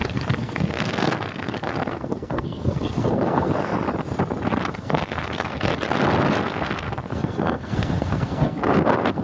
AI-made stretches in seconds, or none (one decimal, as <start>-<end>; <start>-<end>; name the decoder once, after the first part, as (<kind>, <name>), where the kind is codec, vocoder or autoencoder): 0.0-3.7 (codec, SNAC); 4.7-5.7; 6.4-9.2